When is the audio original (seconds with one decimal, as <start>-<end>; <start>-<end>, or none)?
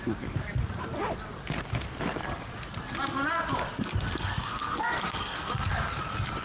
0.0-4.3; 5.5-6.4